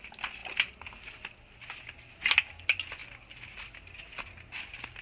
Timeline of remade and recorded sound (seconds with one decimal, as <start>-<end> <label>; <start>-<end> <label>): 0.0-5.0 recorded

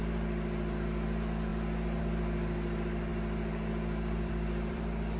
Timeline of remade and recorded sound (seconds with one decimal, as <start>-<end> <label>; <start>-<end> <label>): 0.0-1.5 recorded; 1.5-2.0 remade; 2.0-3.1 recorded; 3.1-5.2 remade

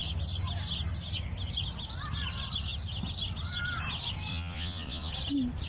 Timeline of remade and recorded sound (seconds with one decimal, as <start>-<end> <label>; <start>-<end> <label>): 0.0-4.3 recorded; 4.3-5.1 remade; 5.1-5.7 recorded

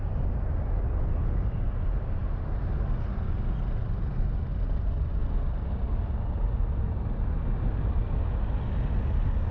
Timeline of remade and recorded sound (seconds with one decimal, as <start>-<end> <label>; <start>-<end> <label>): 0.0-9.5 recorded

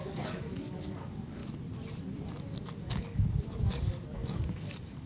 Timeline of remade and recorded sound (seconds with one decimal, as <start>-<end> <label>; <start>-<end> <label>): 0.0-1.4 remade; 1.4-2.8 recorded; 2.8-5.1 remade

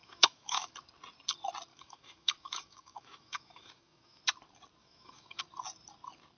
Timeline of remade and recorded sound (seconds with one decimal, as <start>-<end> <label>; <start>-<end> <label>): 0.0-0.7 remade; 0.7-1.7 recorded; 1.7-4.2 remade; 4.2-4.8 recorded; 4.8-5.4 remade; 5.4-6.4 recorded

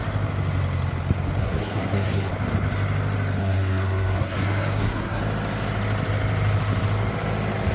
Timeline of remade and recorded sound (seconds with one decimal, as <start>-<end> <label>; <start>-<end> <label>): 0.0-1.4 recorded; 1.4-2.3 remade; 2.3-3.4 recorded; 3.4-5.2 remade; 5.2-7.7 recorded

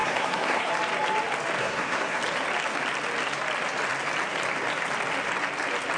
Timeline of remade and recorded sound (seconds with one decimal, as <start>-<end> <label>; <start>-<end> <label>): 0.0-0.7 remade; 0.7-1.6 recorded; 1.6-2.2 remade; 2.2-6.0 recorded